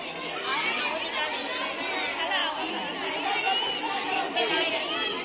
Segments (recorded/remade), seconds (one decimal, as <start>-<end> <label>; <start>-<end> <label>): 0.0-5.2 recorded